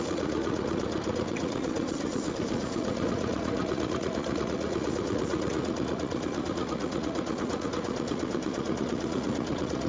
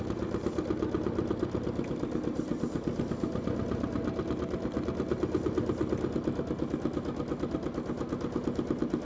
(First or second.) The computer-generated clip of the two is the first